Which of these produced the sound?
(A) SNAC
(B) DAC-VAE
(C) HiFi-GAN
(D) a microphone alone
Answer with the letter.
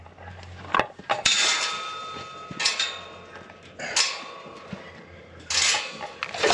D